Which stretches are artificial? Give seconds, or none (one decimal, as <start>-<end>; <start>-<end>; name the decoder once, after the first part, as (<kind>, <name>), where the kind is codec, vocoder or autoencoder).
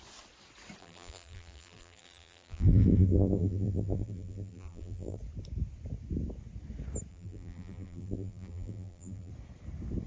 0.8-5.2 (vocoder, BigVGAN v2); 7.1-9.3